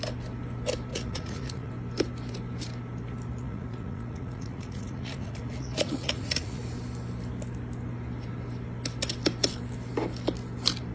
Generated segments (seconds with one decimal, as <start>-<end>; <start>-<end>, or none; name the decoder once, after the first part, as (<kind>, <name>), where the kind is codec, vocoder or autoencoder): 0.9-1.7 (vocoder, Vocos); 3.4-6.6